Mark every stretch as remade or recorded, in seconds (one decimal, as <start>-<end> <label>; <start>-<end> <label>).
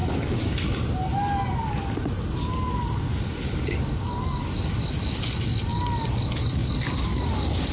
0.0-7.7 recorded